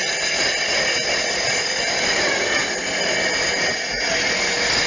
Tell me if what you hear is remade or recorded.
recorded